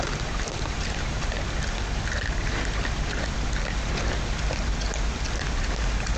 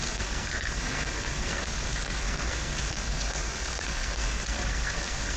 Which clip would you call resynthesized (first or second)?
second